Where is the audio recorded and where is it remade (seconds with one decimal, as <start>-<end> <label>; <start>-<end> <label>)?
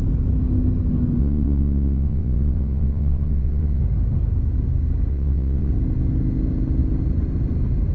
0.0-1.2 recorded; 1.2-3.8 remade; 3.8-5.1 recorded; 5.1-5.7 remade; 5.7-7.9 recorded